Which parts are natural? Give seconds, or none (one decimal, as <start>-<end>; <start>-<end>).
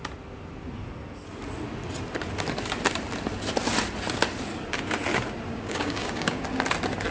0.0-5.5; 6.4-7.1